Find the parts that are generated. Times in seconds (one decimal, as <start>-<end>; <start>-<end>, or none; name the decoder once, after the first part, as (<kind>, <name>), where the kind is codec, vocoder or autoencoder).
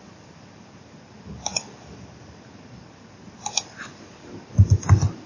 none